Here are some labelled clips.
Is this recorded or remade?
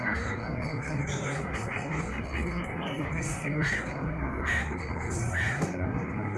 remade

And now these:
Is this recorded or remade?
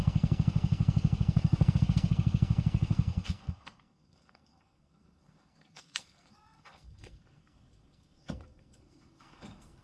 remade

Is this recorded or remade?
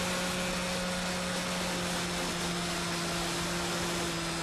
recorded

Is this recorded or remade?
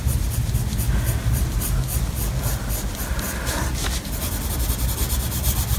recorded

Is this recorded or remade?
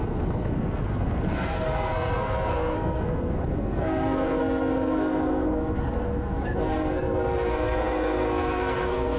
remade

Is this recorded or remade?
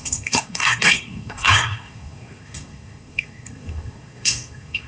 remade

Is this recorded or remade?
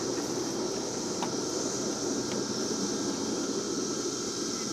recorded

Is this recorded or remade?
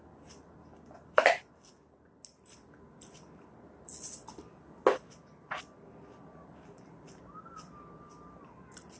recorded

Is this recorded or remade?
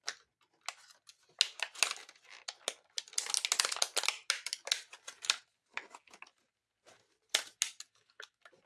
recorded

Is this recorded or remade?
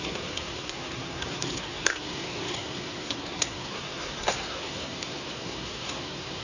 remade